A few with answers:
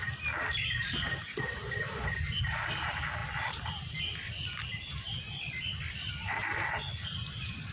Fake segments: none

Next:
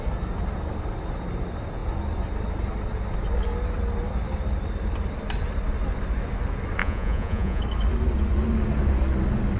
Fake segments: 6.8-7.6 (vocoder, Vocos)

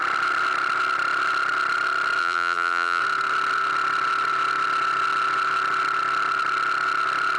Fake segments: 2.2-3.0 (vocoder, BigVGAN v2)

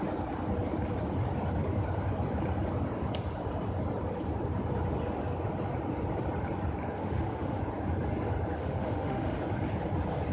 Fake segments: 7.0-7.6 (autoencoder, DAC-VAE); 8.6-9.4